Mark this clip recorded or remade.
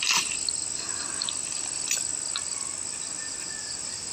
recorded